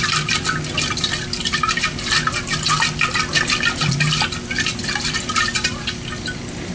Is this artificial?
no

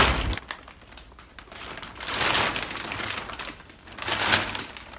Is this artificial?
no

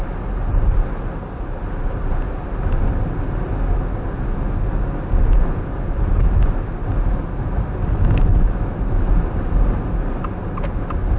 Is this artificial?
no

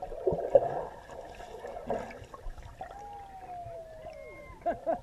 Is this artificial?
no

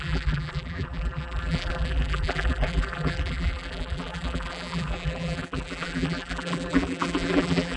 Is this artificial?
yes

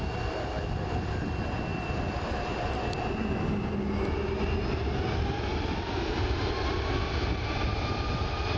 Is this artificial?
no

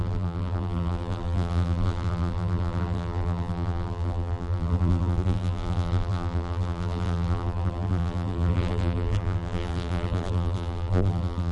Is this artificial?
yes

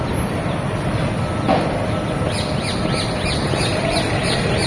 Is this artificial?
yes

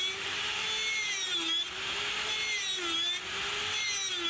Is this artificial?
no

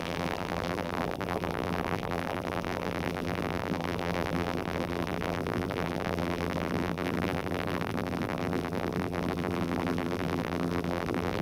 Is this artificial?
yes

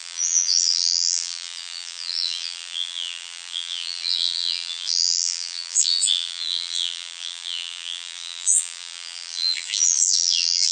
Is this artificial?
yes